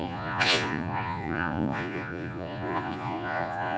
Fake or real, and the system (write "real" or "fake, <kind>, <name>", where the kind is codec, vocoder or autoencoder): fake, vocoder, Vocos